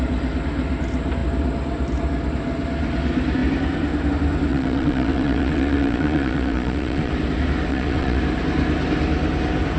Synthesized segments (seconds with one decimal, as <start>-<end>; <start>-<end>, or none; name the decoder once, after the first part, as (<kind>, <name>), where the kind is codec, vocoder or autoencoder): 4.5-7.1 (vocoder, Vocos); 7.7-8.2